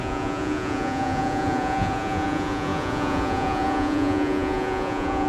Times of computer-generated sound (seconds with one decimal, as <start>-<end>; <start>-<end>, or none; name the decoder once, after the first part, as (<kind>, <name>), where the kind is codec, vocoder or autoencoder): 0.0-5.3 (vocoder, Vocos)